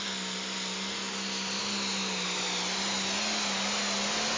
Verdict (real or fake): real